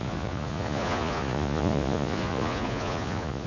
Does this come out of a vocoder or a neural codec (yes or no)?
yes